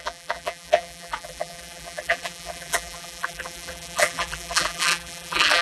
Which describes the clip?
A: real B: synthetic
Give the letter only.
B